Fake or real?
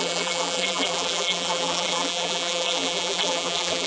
fake